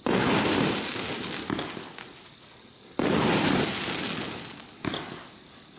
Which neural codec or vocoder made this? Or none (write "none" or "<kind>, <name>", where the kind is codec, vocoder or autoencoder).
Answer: none